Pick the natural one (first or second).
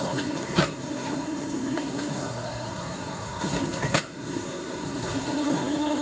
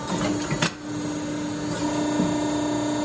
second